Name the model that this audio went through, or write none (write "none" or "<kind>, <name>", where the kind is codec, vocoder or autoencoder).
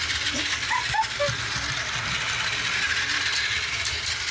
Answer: none